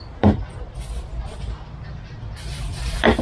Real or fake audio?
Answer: real